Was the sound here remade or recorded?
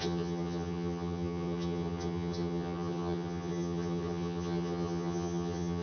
remade